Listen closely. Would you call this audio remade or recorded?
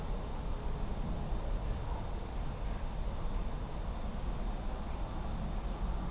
recorded